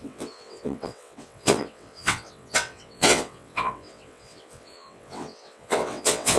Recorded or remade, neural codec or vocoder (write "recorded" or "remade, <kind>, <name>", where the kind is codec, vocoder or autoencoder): remade, vocoder, WaveNeXt